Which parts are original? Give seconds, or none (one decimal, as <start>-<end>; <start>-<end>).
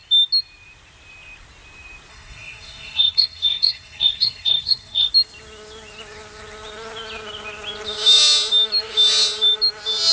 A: 0.0-2.1; 5.1-10.1